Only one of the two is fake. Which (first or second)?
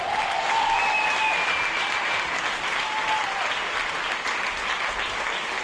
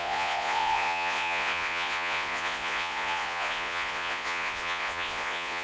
second